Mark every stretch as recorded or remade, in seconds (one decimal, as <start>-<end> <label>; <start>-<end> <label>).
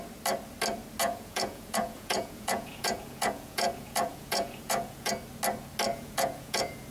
0.0-1.0 recorded; 1.0-5.1 remade; 5.1-5.9 recorded; 5.9-6.9 remade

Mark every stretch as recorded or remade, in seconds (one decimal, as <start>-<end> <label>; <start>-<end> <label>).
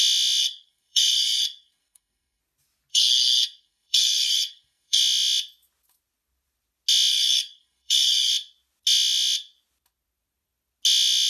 0.0-0.4 recorded; 0.4-2.4 remade; 2.4-2.9 recorded; 2.9-5.0 remade; 5.0-7.1 recorded; 7.1-8.3 remade; 8.3-11.3 recorded